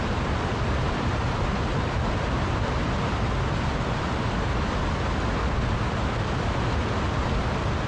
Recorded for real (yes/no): yes